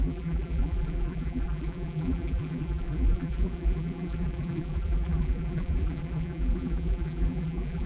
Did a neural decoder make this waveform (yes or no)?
yes